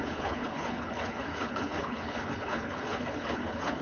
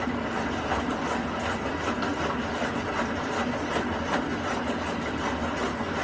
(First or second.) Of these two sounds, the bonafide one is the second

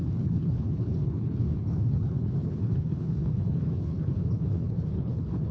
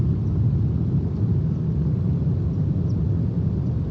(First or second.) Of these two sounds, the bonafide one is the second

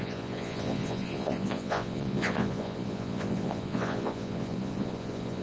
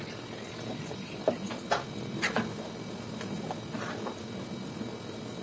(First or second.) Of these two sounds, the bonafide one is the second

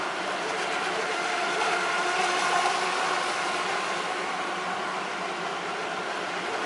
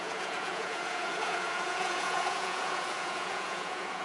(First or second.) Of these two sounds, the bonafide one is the first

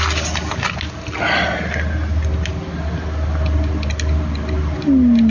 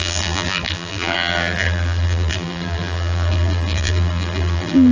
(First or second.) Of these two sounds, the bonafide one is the first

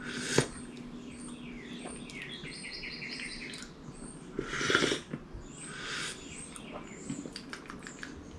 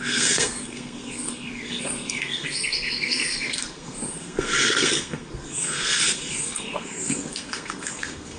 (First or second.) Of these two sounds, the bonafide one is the first